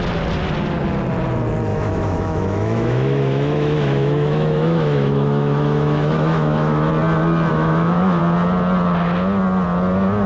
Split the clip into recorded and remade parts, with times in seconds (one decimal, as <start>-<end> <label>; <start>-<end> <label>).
0.0-1.7 recorded; 1.7-6.9 remade; 6.9-7.5 recorded; 7.5-8.2 remade; 8.2-10.3 recorded